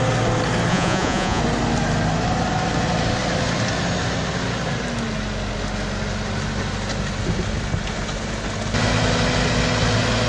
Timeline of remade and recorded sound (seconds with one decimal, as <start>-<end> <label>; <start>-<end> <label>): 0.0-0.7 recorded; 0.7-1.4 remade; 1.4-10.3 recorded